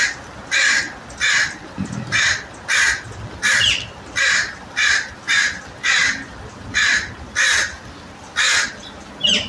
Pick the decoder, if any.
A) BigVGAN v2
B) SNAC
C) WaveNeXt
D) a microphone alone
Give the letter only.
D